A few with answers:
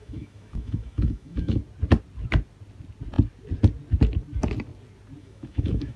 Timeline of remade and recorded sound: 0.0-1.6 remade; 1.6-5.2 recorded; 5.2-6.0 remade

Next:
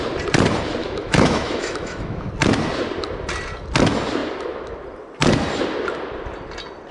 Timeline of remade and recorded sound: 0.0-0.8 recorded; 0.8-2.3 remade; 2.3-6.9 recorded

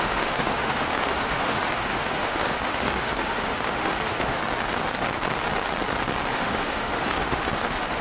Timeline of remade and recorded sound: 0.0-4.4 remade; 4.4-6.3 recorded; 6.3-8.0 remade

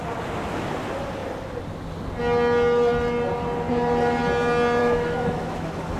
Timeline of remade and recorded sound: 0.0-4.8 recorded; 4.8-6.0 remade

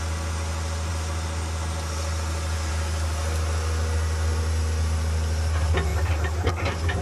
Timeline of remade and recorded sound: 0.0-7.0 recorded

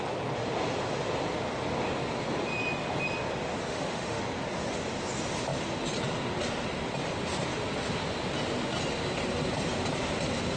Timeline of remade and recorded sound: 0.0-3.7 recorded; 3.7-4.2 remade; 4.2-10.6 recorded

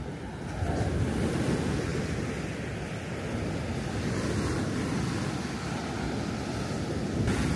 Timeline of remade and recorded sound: 0.0-7.6 recorded